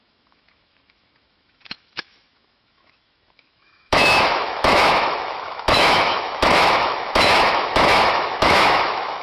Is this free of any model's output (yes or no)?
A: no